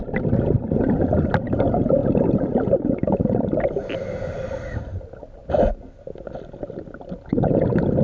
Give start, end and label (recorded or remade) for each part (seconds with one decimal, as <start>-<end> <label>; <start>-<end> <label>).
0.0-8.0 recorded